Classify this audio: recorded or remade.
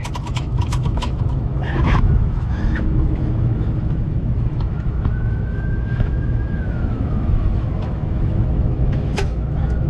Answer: remade